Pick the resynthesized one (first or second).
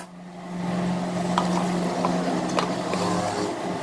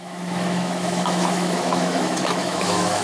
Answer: second